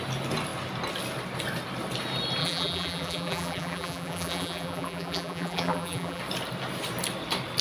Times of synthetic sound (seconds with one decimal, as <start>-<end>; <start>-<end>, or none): 2.4-6.2